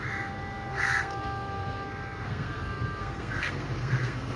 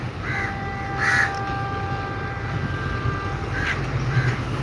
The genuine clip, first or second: second